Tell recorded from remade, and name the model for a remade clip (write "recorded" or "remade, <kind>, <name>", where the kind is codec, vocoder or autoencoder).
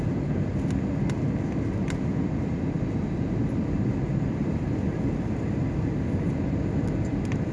recorded